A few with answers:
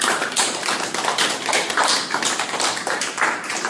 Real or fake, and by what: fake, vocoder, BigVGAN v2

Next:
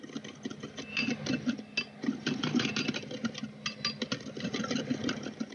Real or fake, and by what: real